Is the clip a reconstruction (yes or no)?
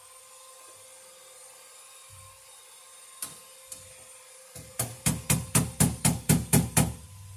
no